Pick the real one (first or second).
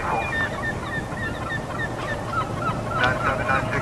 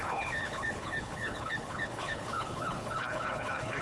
first